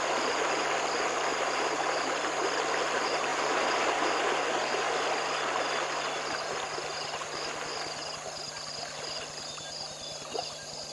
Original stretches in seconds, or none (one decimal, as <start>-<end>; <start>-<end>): 0.0-1.3; 1.8-3.3; 4.3-10.9